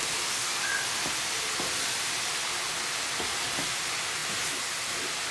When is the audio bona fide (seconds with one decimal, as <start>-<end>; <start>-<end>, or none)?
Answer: 0.0-5.3